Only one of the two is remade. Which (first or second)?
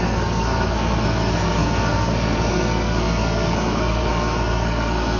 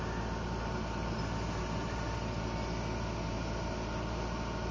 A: first